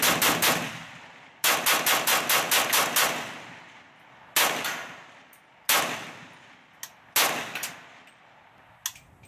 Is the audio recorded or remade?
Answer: recorded